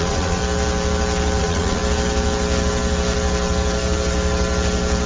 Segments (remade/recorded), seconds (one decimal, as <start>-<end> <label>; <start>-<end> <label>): 0.0-0.4 remade; 0.4-1.4 recorded; 1.4-1.8 remade; 1.8-5.1 recorded